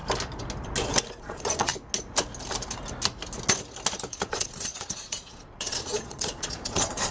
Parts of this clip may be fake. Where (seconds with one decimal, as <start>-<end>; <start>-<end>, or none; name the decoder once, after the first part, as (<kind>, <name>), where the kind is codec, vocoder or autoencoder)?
1.2-1.7 (vocoder, Vocos); 4.1-7.1